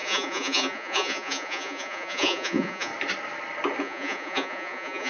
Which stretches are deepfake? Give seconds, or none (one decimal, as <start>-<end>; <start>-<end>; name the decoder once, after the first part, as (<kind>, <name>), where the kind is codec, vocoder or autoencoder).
0.0-2.9 (vocoder, Vocos); 3.8-5.1